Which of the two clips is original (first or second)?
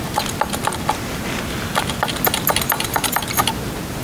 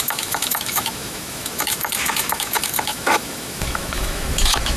first